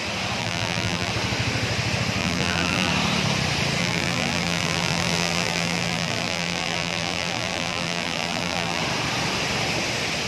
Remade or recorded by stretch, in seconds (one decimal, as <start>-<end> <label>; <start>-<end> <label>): 0.0-0.4 recorded; 0.4-1.1 remade; 1.1-2.2 recorded; 2.2-2.9 remade; 2.9-3.8 recorded; 3.8-8.8 remade; 8.8-10.3 recorded